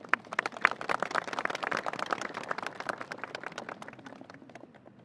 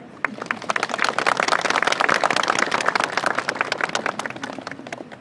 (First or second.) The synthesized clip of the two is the first